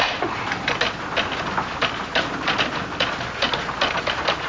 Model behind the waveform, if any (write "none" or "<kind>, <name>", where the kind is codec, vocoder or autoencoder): none